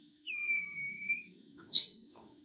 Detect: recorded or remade remade